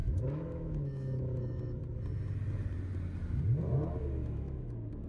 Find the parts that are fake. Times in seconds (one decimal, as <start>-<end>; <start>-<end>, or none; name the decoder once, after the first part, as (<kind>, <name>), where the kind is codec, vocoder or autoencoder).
0.0-1.8 (autoencoder, DAC-VAE); 4.0-5.1